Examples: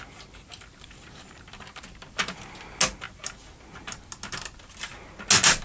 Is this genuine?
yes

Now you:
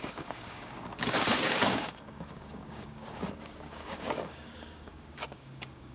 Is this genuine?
no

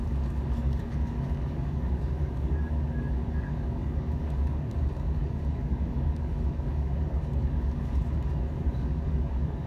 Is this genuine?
no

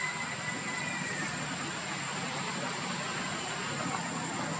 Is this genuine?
yes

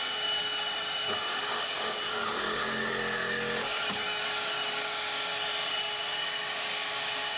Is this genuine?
no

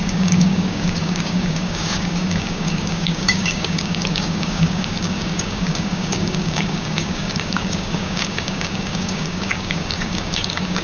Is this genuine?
no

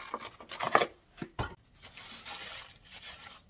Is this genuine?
yes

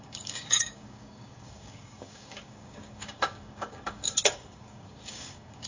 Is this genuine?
no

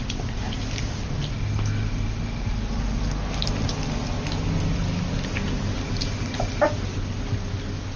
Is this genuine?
yes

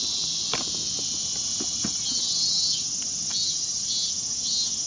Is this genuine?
yes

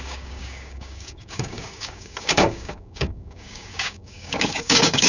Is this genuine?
no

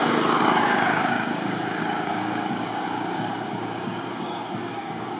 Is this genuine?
no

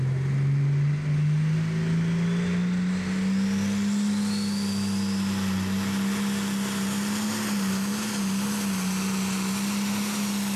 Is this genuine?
yes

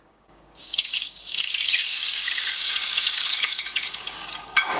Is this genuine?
no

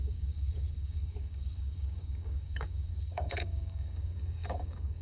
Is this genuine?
no